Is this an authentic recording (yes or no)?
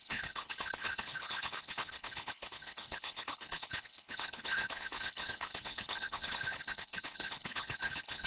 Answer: no